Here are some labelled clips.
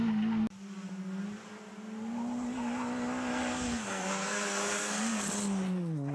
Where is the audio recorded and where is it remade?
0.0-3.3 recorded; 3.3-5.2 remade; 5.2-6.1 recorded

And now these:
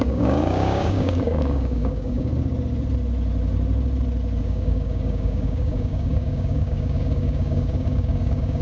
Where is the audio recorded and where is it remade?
0.0-2.3 remade; 2.3-4.4 recorded; 4.4-8.6 remade

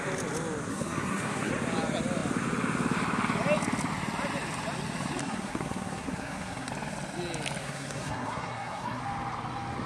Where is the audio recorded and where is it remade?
0.0-0.7 recorded; 0.7-1.5 remade; 1.5-5.2 recorded; 5.2-6.7 remade; 6.7-7.6 recorded; 7.6-9.0 remade; 9.0-9.9 recorded

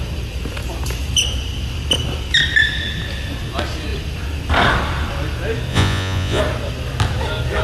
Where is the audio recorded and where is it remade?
0.0-5.7 recorded; 5.7-6.4 remade; 6.4-7.6 recorded

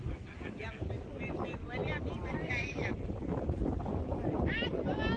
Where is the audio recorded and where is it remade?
0.0-5.2 recorded